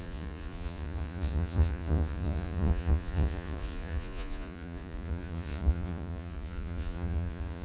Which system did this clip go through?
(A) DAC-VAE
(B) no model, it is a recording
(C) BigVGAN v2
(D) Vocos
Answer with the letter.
D